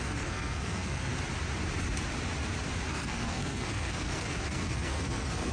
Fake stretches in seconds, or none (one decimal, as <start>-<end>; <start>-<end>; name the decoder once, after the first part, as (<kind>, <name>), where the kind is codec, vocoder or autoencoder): 0.0-1.1 (codec, SNAC); 2.9-5.5